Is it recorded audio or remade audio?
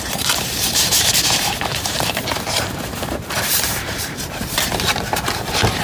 remade